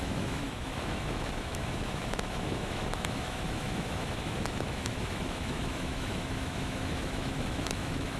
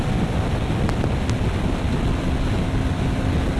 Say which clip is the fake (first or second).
first